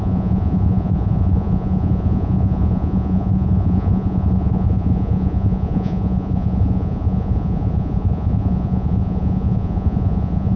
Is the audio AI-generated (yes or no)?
yes